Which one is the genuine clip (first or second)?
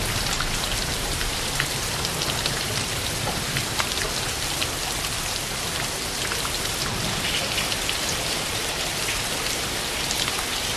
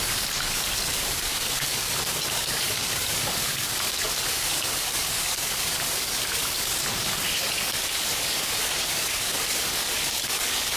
first